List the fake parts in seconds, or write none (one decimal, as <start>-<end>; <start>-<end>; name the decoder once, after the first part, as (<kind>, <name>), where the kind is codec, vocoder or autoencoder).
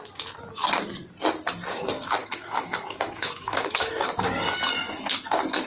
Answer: 2.2-3.9 (autoencoder, DAC-VAE)